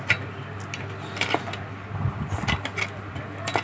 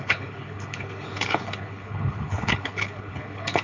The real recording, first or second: first